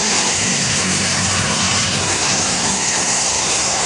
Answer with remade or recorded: remade